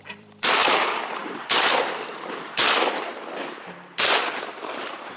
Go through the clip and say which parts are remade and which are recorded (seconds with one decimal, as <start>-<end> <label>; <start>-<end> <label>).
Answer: 0.0-5.2 remade